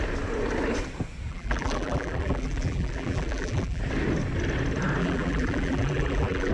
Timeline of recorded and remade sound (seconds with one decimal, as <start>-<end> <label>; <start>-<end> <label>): 0.0-1.3 recorded; 1.3-3.8 remade; 3.8-5.0 recorded; 5.0-6.5 remade